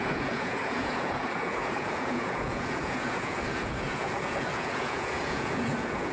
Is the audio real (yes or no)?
no